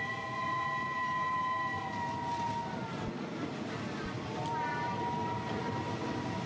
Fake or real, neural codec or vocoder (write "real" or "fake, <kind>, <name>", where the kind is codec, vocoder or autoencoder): real